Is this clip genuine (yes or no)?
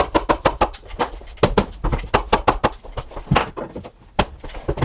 yes